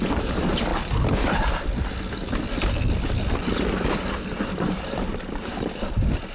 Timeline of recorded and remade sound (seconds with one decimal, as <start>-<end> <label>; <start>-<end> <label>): 0.0-0.7 remade; 0.7-4.5 recorded; 4.5-6.3 remade